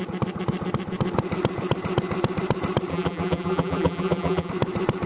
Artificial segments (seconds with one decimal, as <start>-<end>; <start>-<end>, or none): 2.9-4.5